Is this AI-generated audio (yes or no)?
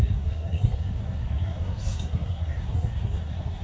yes